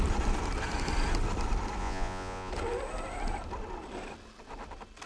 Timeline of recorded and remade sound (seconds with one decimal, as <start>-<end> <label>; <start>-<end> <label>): 0.0-1.8 recorded; 1.8-2.5 remade; 2.5-5.1 recorded